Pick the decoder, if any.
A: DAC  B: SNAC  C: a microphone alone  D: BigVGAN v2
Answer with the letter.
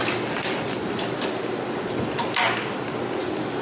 C